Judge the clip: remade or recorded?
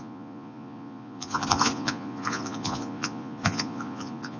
remade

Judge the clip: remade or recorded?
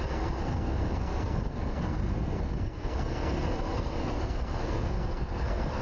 remade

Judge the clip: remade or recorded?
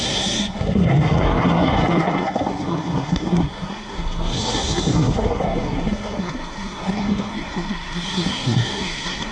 remade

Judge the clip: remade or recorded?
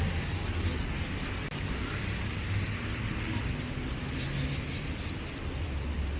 recorded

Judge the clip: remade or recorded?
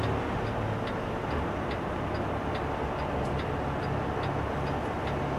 recorded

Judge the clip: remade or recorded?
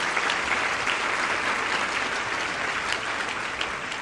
recorded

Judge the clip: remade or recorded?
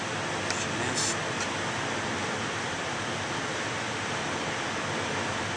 recorded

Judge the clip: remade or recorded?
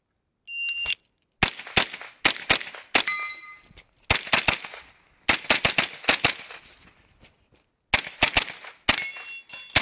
recorded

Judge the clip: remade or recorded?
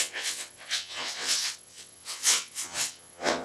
remade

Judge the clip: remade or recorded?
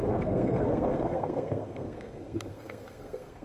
remade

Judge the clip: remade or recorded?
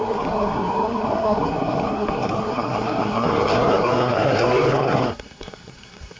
remade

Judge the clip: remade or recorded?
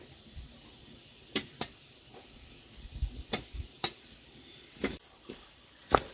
remade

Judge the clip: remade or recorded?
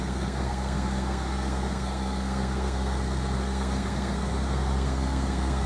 remade